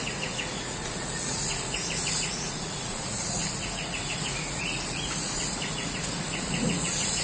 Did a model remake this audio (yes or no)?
yes